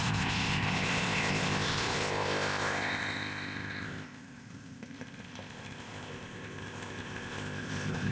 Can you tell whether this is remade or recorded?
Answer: remade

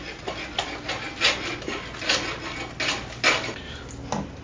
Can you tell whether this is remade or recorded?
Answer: recorded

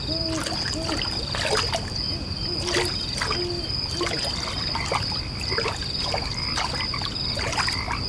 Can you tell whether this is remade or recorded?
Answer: recorded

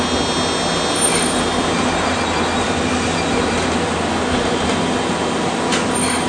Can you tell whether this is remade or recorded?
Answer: recorded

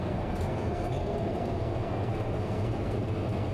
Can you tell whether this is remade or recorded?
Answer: remade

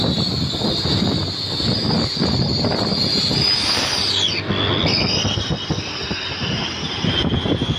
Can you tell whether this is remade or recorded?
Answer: recorded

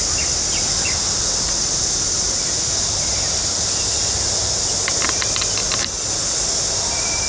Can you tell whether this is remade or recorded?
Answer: recorded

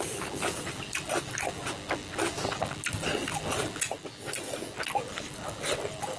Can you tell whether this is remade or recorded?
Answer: recorded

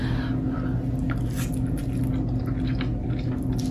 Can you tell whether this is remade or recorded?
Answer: recorded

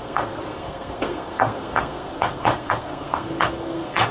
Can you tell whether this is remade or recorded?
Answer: remade